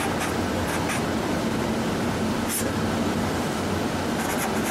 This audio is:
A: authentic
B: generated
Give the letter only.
A